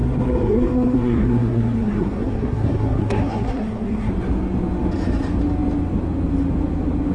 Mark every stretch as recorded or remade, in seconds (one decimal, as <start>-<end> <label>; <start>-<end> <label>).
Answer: 0.0-4.1 remade; 4.1-7.1 recorded